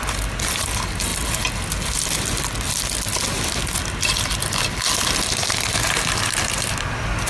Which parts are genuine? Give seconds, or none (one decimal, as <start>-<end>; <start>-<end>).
0.0-7.3